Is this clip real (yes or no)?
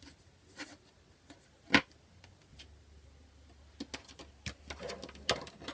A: yes